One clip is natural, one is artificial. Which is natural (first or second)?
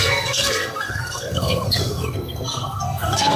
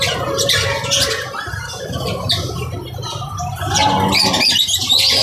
second